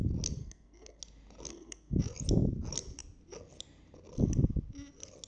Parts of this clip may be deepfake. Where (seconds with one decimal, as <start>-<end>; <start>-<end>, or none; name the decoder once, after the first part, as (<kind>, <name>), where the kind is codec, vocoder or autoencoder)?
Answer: 0.4-1.0 (codec, SNAC); 1.5-2.0